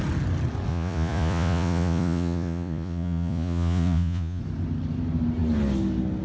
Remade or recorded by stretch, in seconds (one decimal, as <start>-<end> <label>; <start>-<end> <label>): 0.0-0.7 recorded; 0.7-4.4 remade; 4.4-6.2 recorded